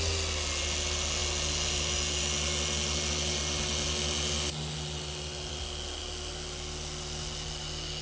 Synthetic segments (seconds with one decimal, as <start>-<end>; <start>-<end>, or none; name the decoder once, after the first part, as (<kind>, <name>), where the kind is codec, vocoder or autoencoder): none